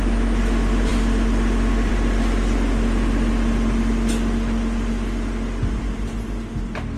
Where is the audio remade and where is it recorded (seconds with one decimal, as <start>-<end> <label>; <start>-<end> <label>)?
0.0-7.0 recorded